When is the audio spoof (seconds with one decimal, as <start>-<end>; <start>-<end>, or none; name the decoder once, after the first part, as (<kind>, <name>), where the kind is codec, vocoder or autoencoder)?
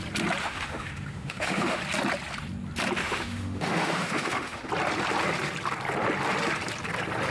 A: 0.4-1.8 (autoencoder, DAC-VAE); 3.0-4.7